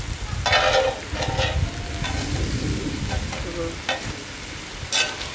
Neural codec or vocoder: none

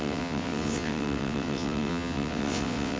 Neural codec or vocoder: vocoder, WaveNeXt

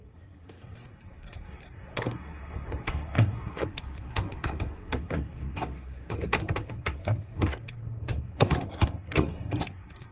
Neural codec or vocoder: codec, SNAC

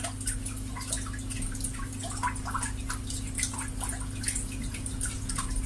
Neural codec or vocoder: none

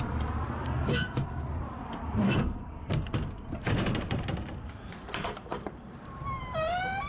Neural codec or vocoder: vocoder, BigVGAN v2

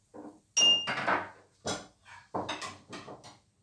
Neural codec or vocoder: none